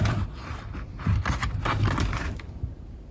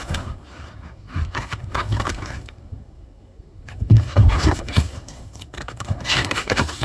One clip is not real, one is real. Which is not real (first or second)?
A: second